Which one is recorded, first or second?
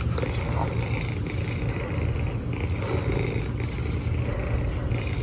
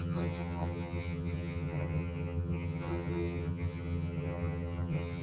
first